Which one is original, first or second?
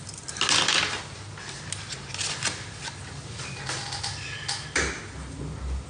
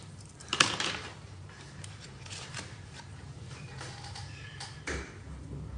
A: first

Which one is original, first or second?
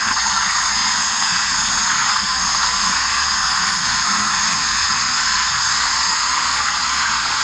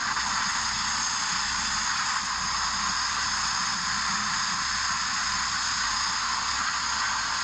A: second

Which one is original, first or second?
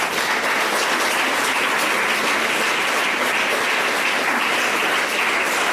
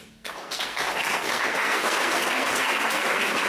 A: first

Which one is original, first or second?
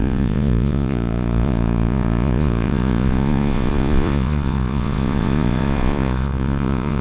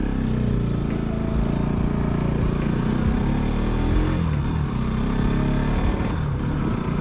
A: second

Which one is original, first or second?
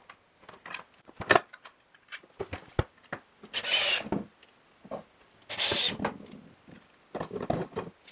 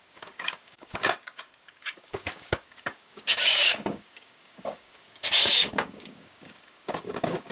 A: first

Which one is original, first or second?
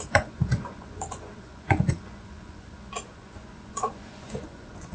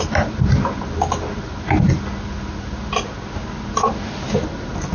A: second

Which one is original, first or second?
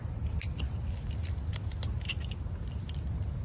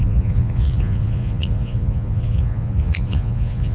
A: first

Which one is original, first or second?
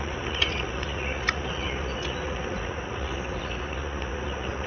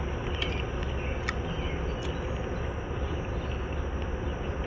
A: second